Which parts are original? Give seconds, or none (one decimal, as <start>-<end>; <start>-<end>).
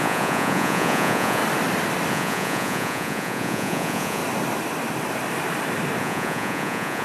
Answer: 1.4-2.1; 4.2-6.0